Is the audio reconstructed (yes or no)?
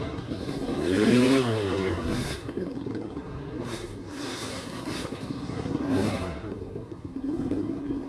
yes